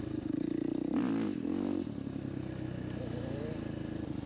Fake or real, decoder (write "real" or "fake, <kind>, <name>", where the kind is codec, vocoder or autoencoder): real